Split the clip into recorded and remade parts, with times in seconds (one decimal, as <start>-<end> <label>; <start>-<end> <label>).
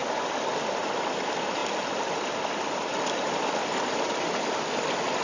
0.0-5.2 recorded